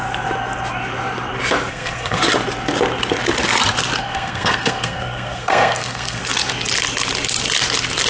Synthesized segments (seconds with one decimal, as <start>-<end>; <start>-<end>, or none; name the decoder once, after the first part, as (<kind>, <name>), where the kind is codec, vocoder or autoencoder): 1.7-2.2 (codec, SNAC); 4.0-6.2